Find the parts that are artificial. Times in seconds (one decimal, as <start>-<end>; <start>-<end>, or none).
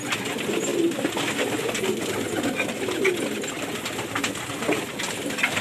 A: none